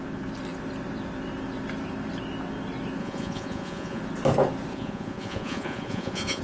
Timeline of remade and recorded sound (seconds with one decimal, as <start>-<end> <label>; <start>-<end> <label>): 0.0-3.0 recorded; 3.0-4.0 remade; 4.0-4.7 recorded; 4.7-6.4 remade